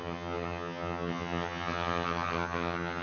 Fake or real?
fake